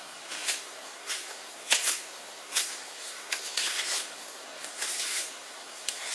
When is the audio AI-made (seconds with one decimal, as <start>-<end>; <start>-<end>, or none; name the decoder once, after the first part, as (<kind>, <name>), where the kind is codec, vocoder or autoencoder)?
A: 0.0-6.1 (codec, SNAC)